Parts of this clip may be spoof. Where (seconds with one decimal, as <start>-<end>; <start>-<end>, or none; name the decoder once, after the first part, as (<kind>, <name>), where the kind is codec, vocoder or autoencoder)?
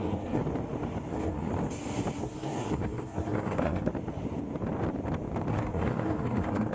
0.0-0.4 (codec, SNAC); 1.1-1.5; 2.2-3.9; 5.5-6.7